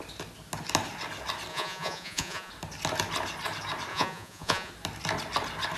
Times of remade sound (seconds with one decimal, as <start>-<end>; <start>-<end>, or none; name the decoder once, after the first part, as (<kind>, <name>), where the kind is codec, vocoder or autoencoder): 1.5-2.5 (vocoder, Vocos); 3.9-4.7